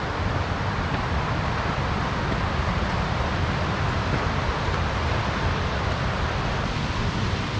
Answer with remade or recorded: recorded